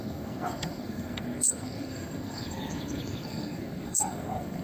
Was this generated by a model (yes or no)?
yes